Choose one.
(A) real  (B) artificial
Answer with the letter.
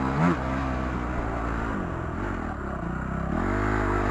A